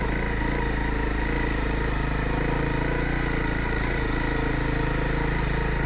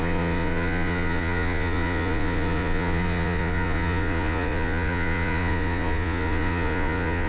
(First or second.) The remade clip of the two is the second